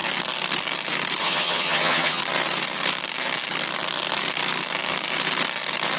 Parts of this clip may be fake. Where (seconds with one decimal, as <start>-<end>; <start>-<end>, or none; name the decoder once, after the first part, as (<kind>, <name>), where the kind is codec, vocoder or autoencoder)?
1.2-2.2 (vocoder, HiFi-GAN)